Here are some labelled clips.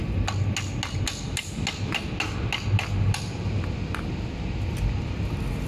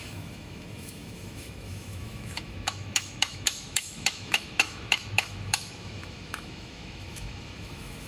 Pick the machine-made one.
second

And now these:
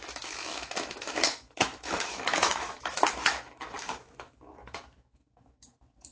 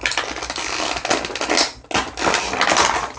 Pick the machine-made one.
first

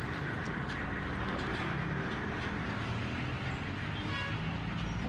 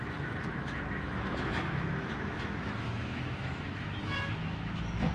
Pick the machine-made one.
second